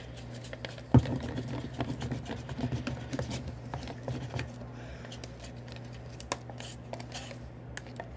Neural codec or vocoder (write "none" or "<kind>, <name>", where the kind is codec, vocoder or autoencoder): none